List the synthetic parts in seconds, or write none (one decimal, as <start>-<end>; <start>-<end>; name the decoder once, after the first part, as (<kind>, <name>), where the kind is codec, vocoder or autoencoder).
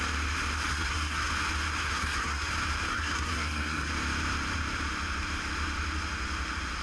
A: 0.7-1.3 (codec, SNAC); 1.8-2.5; 2.9-3.9